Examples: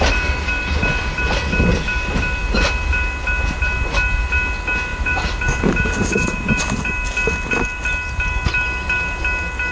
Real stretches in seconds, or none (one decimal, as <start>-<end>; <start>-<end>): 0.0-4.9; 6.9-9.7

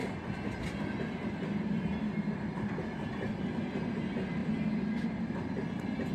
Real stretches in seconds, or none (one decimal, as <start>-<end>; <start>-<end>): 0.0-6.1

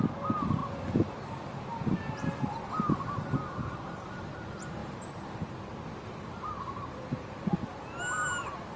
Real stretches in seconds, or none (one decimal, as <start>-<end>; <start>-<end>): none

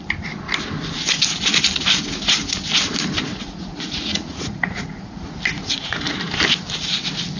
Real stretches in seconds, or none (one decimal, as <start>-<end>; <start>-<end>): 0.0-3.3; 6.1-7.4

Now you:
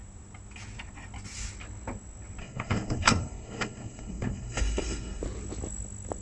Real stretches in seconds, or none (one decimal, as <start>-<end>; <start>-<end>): 0.0-2.4; 5.2-6.2